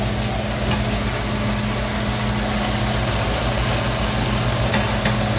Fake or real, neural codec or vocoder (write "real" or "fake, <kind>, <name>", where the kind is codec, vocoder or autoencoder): real